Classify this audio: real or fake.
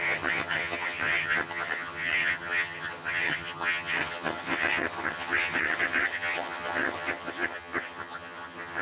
fake